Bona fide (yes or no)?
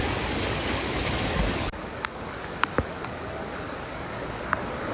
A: no